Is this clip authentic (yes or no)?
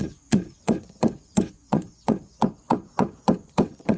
no